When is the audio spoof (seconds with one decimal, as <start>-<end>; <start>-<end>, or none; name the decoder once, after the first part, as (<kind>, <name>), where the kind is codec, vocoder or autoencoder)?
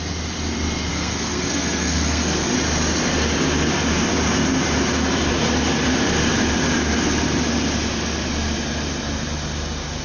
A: 0.9-2.5 (codec, SNAC)